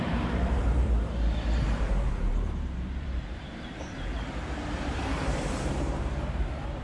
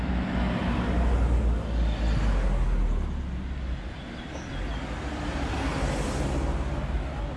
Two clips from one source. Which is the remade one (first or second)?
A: first